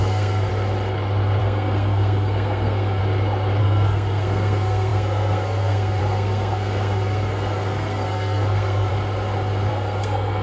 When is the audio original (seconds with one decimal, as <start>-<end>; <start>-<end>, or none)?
0.5-1.4; 3.0-3.6; 8.9-9.7